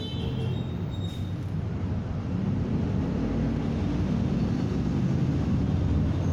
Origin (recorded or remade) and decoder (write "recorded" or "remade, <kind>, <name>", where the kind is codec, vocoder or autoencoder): recorded